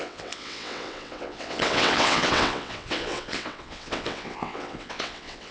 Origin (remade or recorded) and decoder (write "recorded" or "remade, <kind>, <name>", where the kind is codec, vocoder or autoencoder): remade, vocoder, WaveNeXt